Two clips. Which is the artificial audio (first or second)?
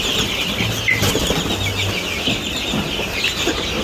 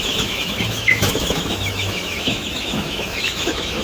second